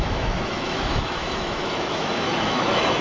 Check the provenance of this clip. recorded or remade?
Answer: remade